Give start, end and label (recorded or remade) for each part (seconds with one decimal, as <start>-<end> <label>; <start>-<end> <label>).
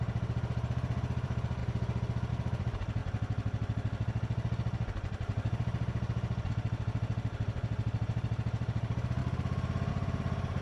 0.0-1.6 remade; 1.6-2.3 recorded; 2.3-3.0 remade; 3.0-6.5 recorded; 6.5-9.2 remade; 9.2-9.9 recorded; 9.9-10.6 remade